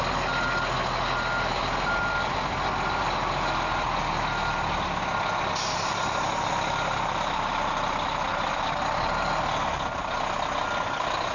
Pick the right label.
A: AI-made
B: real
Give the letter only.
B